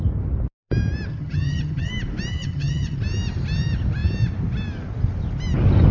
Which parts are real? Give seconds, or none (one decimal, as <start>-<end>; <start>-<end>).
0.0-1.1; 1.9-2.3; 3.0-5.9